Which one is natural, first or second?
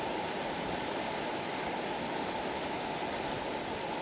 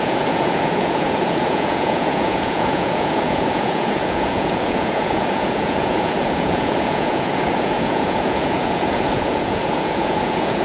first